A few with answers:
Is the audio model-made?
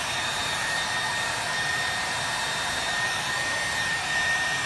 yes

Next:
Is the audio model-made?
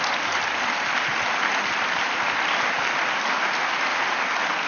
no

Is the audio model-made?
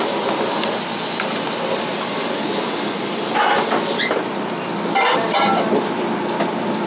no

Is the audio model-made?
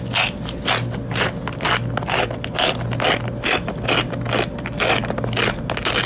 no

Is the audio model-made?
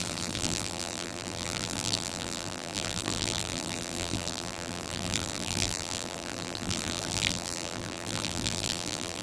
yes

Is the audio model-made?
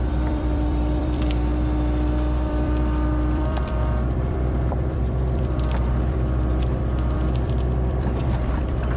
yes